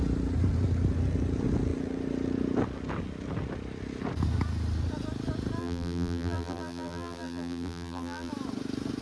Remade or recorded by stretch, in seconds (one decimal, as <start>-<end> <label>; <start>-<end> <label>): 0.0-5.6 recorded; 5.6-8.3 remade; 8.3-9.0 recorded